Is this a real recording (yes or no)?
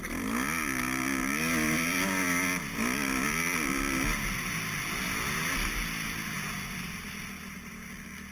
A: yes